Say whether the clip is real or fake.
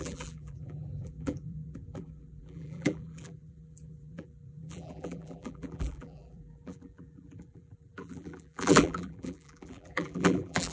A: fake